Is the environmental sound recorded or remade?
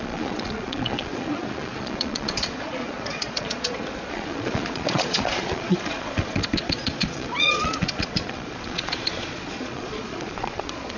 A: remade